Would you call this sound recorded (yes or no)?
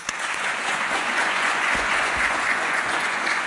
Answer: no